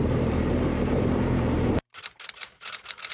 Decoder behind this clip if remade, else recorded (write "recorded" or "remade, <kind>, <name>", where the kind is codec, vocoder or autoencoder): remade, vocoder, BigVGAN v2